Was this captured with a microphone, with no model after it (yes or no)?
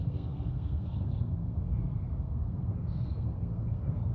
no